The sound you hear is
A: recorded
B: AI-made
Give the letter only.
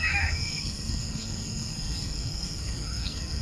B